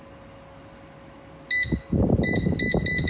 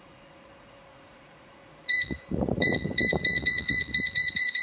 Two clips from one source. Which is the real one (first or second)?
first